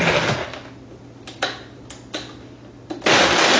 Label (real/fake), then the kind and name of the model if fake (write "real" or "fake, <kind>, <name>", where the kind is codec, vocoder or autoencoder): real